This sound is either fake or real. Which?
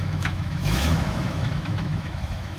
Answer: fake